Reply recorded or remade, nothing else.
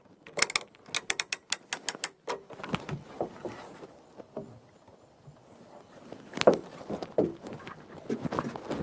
recorded